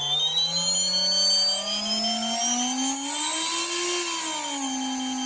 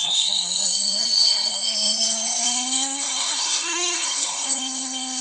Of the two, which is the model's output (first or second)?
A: second